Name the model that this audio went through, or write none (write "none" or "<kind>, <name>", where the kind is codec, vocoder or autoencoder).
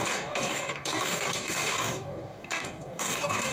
codec, DAC